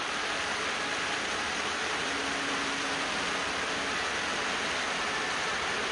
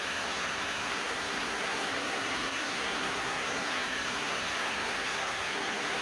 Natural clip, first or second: first